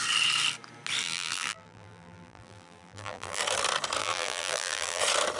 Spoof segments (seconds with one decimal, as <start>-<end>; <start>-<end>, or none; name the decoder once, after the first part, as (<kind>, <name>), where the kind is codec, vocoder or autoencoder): 1.0-3.4 (vocoder, BigVGAN v2); 4.0-5.0

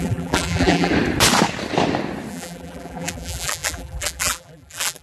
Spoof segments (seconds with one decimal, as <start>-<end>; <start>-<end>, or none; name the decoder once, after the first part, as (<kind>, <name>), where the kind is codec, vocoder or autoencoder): 0.0-0.9 (vocoder, BigVGAN v2); 2.3-5.0

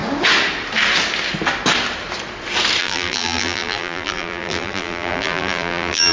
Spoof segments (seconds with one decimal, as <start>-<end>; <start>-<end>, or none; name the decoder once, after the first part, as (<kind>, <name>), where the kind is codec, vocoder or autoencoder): 2.8-6.1 (vocoder, BigVGAN v2)

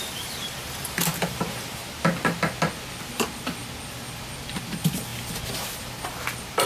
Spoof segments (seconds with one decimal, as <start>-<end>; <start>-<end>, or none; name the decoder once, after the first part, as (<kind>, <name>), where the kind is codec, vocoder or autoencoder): 0.0-1.8 (vocoder, BigVGAN v2); 3.0-3.6; 4.5-5.1; 5.8-6.7

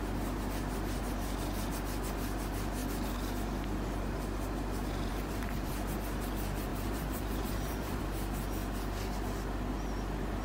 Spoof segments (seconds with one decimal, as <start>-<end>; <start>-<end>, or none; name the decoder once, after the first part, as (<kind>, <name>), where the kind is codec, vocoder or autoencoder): 5.1-5.7 (vocoder, BigVGAN v2); 6.7-8.0

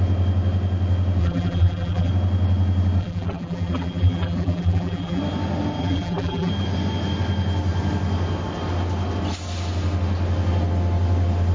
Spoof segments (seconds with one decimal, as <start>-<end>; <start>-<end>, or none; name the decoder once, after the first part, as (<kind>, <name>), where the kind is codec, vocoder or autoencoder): 1.2-2.1 (vocoder, BigVGAN v2); 3.0-5.2; 5.8-6.5

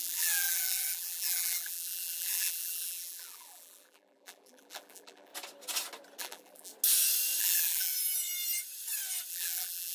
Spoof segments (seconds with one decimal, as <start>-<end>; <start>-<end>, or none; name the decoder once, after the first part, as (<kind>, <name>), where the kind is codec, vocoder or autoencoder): 0.0-5.3 (vocoder, BigVGAN v2); 6.2-6.7; 7.4-7.9; 9.3-9.9

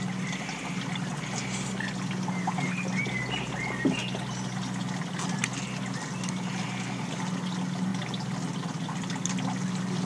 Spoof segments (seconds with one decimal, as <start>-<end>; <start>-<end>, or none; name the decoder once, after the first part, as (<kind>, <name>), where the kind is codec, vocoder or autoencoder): none